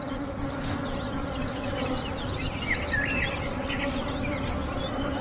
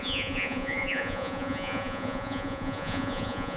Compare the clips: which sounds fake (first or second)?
second